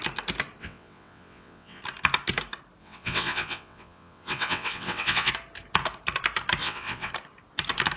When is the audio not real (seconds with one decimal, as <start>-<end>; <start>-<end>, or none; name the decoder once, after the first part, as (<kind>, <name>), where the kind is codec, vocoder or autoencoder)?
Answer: 0.6-1.8 (vocoder, WaveNeXt); 2.8-5.3; 6.6-7.1